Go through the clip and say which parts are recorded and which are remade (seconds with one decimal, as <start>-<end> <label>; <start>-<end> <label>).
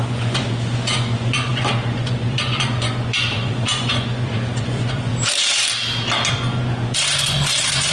0.0-5.1 remade; 5.1-6.3 recorded; 6.3-7.9 remade